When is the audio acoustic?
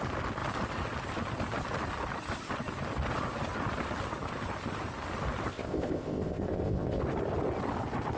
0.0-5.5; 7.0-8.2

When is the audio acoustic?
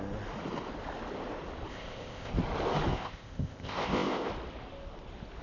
0.0-1.7; 2.3-2.9; 4.3-5.4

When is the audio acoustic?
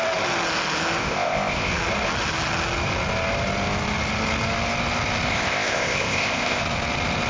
0.0-1.0; 1.7-5.3; 6.6-7.3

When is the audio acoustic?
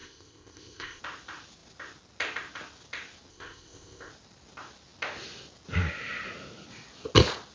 1.0-3.3; 4.1-7.5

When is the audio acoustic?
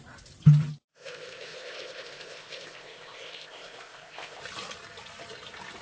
0.0-0.9; 4.4-5.8